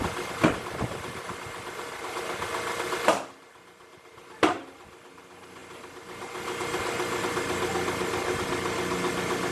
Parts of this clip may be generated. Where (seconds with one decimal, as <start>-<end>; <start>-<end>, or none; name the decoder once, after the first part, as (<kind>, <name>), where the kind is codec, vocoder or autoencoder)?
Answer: none

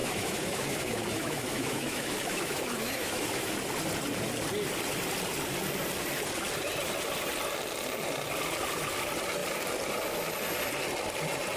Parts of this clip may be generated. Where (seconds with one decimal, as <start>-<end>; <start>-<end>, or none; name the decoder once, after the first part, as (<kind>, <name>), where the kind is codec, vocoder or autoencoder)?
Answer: 0.0-3.5 (autoencoder, DAC-VAE)

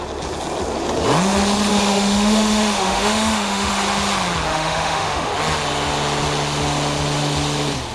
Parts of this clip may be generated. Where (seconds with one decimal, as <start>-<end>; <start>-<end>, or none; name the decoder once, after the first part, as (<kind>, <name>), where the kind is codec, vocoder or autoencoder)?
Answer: 1.7-3.7 (autoencoder, DAC-VAE); 4.5-5.3

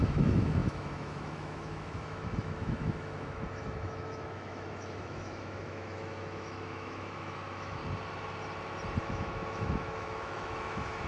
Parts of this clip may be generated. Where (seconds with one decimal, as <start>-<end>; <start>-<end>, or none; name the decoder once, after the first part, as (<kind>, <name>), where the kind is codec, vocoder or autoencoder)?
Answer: 0.0-7.8 (autoencoder, DAC-VAE); 9.0-11.1

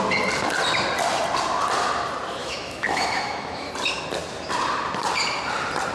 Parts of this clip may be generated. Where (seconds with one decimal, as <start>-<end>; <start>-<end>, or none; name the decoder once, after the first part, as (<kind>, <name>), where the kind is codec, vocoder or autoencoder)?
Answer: 2.4-3.7 (autoencoder, DAC-VAE)

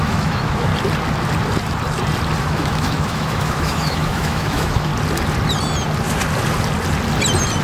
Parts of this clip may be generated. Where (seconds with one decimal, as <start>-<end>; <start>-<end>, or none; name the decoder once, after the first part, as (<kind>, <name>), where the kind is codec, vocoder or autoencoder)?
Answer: 0.0-0.7 (autoencoder, DAC-VAE); 2.4-4.9

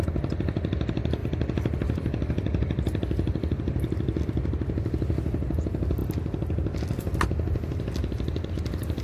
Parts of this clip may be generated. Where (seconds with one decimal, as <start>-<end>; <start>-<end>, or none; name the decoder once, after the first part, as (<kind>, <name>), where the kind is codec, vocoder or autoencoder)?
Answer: none

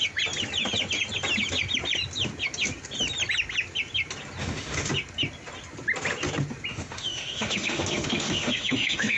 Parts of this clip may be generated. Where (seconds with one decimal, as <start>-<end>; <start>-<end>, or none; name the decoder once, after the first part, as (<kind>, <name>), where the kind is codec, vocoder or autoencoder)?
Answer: 4.4-4.9 (autoencoder, DAC-VAE); 6.7-9.2